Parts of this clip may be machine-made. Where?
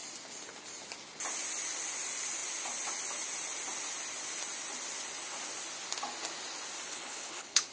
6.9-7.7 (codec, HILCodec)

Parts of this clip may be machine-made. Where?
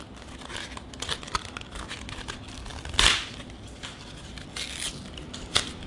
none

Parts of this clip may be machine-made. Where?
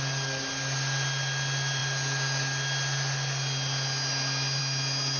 none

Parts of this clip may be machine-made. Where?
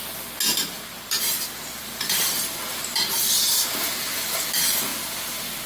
0.5-1.2 (vocoder, BigVGAN v2); 1.8-4.5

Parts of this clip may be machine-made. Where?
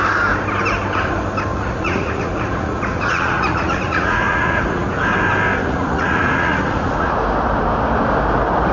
1.5-5.0 (vocoder, Vocos); 5.6-7.1